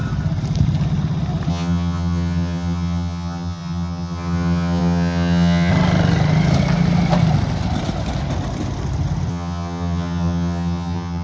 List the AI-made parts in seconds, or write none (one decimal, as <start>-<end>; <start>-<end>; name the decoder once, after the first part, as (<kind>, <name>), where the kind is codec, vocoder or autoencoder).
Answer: 1.5-5.7 (vocoder, HiFi-GAN); 9.3-11.2

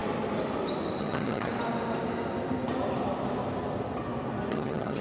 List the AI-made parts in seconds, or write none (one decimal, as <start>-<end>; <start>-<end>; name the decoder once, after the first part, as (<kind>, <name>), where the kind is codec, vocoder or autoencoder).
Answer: 1.0-1.5 (vocoder, HiFi-GAN); 4.5-5.0

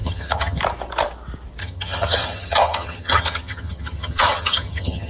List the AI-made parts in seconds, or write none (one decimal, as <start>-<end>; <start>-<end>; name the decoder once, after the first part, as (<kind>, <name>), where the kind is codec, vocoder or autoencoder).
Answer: 0.0-0.6 (vocoder, HiFi-GAN); 1.6-5.1

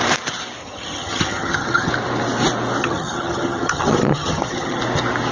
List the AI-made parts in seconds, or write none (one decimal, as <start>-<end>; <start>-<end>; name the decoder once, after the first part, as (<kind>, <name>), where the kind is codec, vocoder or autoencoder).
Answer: 0.6-1.9 (vocoder, HiFi-GAN); 2.8-4.8

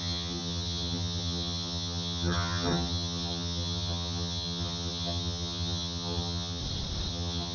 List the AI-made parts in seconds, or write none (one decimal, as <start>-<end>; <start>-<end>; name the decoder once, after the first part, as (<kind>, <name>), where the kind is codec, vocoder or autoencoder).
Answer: 0.0-6.6 (vocoder, HiFi-GAN); 7.1-7.5

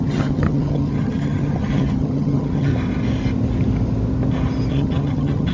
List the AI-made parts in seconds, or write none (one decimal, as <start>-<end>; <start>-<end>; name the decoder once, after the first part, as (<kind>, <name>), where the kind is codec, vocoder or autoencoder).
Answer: 0.0-2.7 (vocoder, HiFi-GAN); 4.7-5.5

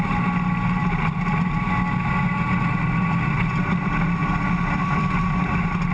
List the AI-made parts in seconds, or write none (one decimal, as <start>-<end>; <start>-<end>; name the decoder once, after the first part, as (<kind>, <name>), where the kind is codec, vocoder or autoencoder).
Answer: none